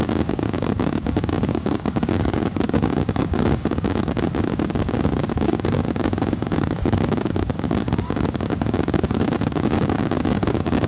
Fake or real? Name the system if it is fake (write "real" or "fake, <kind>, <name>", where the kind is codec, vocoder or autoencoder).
fake, codec, DAC